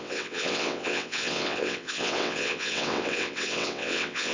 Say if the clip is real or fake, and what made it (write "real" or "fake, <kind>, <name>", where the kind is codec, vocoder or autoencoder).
fake, vocoder, WaveNeXt